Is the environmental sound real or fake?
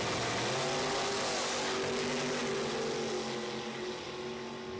real